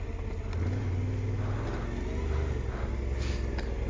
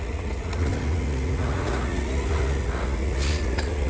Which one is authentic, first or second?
first